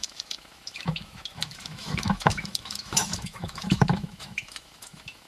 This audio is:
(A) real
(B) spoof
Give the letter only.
B